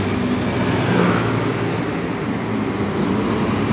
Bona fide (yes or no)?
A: yes